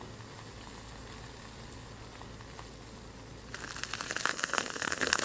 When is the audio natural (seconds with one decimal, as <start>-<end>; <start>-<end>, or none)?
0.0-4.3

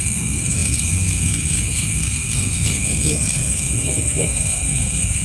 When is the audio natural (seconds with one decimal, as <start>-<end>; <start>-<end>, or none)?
none

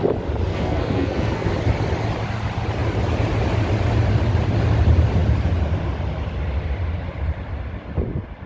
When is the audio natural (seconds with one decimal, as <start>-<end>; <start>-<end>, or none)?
0.0-0.5; 1.5-8.5

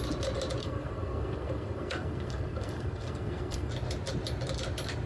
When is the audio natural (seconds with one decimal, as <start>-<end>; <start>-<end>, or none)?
0.0-0.6; 3.7-5.1

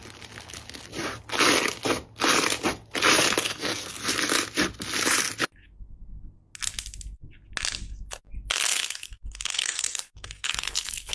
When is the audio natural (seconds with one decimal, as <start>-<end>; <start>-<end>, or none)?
0.0-3.4; 3.9-8.7

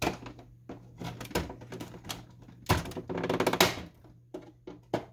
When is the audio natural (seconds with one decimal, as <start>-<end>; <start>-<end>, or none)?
0.0-5.1

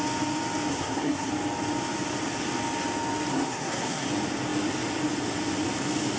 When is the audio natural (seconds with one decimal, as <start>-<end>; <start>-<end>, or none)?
0.0-0.7; 1.3-3.3; 4.1-6.2